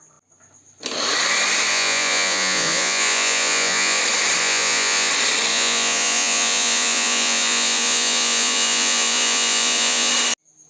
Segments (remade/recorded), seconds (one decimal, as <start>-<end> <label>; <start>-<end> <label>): 0.0-1.7 recorded; 1.7-4.0 remade; 4.0-4.4 recorded; 4.4-5.1 remade; 5.1-5.5 recorded; 5.5-10.1 remade; 10.1-10.7 recorded